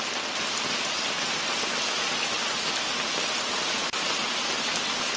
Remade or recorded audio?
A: recorded